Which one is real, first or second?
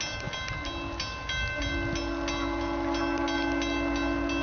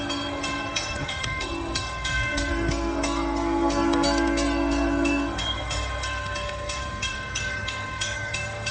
first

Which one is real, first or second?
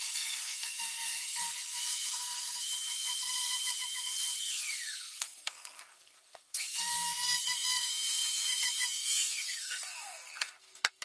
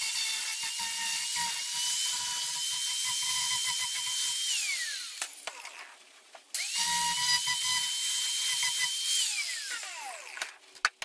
second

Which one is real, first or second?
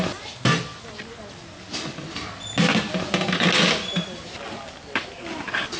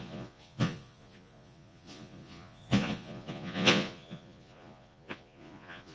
first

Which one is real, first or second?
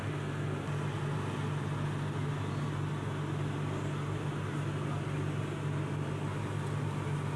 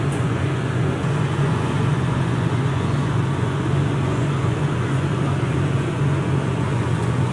first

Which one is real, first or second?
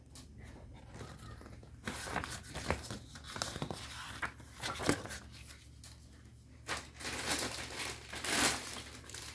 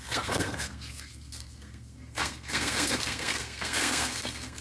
first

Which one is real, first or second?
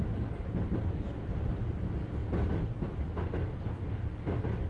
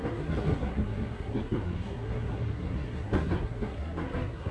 first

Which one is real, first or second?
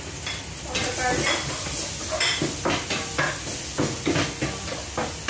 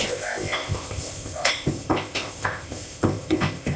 first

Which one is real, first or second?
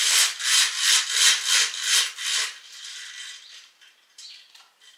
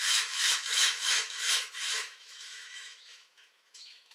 first